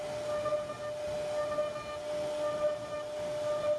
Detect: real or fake real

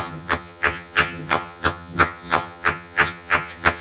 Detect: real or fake fake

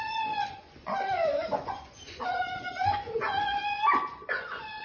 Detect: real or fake fake